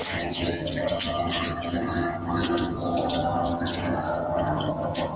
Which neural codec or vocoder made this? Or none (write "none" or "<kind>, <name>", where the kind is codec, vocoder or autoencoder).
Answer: vocoder, HiFi-GAN